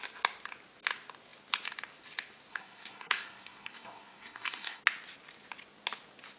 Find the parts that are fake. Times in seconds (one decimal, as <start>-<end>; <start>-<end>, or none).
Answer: 2.5-4.8